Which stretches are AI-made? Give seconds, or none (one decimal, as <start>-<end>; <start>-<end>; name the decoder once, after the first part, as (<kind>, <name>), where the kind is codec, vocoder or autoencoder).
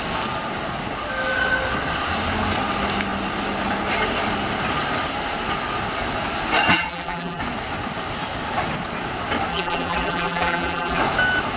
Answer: 6.7-7.4 (vocoder, BigVGAN v2); 9.5-11.0